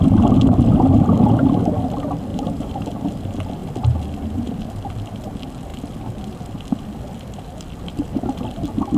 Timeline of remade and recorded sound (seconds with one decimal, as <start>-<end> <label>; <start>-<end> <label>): 0.0-2.3 recorded; 2.3-2.9 remade; 2.9-9.0 recorded